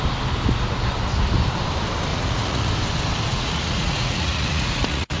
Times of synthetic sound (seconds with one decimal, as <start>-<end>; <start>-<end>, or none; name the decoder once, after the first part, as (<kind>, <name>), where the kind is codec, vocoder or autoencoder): 2.1-2.7 (vocoder, Vocos); 3.3-5.2